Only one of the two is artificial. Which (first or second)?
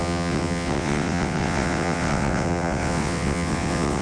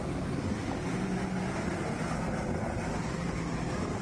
first